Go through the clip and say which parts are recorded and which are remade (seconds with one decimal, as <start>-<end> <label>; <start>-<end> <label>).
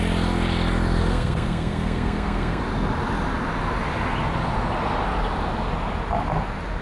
0.0-1.1 recorded; 1.1-2.6 remade; 2.6-6.8 recorded